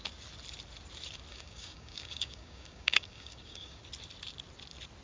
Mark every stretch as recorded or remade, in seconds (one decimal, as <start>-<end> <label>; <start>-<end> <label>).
0.0-1.3 recorded; 1.3-3.8 remade; 3.8-5.0 recorded